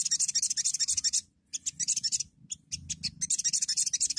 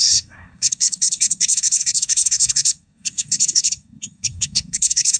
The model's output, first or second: second